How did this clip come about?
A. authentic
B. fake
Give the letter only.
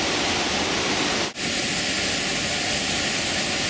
A